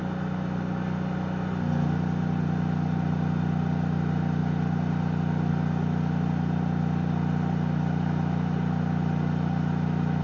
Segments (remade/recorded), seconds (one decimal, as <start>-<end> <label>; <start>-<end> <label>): 0.0-10.2 recorded